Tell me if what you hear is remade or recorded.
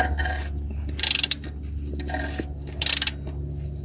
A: recorded